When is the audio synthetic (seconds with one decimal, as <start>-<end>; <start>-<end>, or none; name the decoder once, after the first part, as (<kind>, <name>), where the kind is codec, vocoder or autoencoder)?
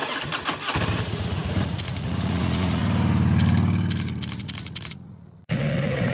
1.0-2.8 (vocoder, Vocos); 4.4-6.1